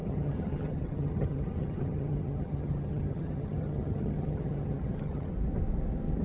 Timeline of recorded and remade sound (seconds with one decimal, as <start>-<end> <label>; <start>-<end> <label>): 0.0-5.3 remade; 5.3-6.2 recorded